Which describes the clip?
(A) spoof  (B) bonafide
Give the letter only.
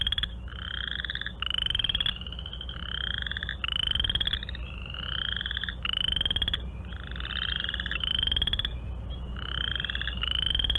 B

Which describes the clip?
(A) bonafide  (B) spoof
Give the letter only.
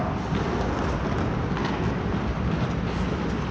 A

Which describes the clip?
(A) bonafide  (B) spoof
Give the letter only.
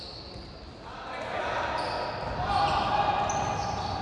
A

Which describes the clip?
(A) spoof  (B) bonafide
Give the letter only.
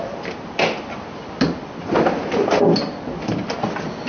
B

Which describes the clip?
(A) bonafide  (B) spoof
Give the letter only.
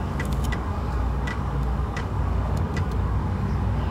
B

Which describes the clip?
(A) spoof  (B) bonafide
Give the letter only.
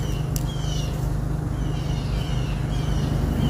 B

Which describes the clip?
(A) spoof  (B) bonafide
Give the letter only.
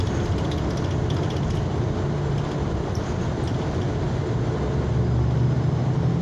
B